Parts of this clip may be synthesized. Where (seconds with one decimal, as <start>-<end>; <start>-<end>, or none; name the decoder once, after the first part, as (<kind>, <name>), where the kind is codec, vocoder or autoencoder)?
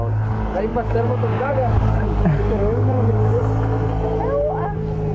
0.7-3.4 (codec, DAC)